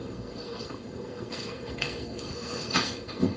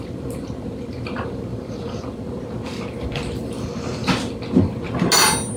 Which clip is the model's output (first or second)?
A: first